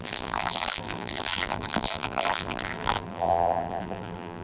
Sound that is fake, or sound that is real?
fake